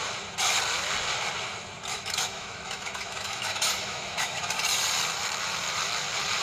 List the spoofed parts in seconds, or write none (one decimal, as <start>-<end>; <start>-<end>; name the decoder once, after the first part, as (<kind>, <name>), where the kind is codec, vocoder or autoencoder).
1.9-4.5 (autoencoder, DAC-VAE)